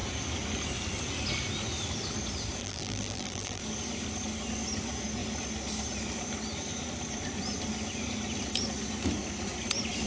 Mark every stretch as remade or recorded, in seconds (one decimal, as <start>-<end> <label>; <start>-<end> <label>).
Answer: 0.0-2.6 recorded; 2.6-3.6 remade; 3.6-10.1 recorded